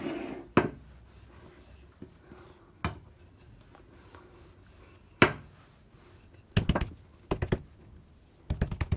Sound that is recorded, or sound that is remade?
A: recorded